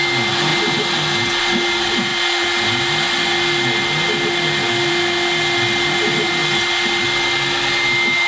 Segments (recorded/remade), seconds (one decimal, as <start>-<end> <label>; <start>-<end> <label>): 0.0-8.3 recorded